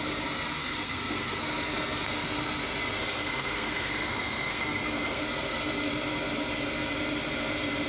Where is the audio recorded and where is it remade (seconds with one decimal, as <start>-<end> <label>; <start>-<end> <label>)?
0.0-0.6 recorded; 0.6-1.5 remade; 1.5-3.0 recorded; 3.0-5.2 remade; 5.2-7.9 recorded